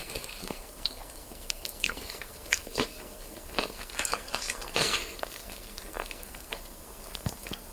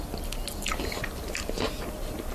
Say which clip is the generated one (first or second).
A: first